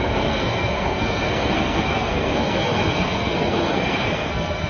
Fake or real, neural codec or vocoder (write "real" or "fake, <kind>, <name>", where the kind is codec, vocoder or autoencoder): fake, codec, SNAC